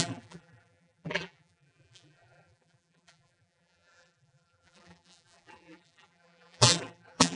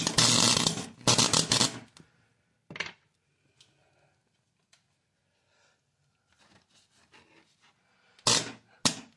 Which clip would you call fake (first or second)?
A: first